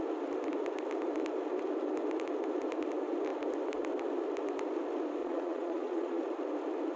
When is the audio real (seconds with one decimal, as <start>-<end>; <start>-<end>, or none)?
0.0-5.2; 6.2-7.0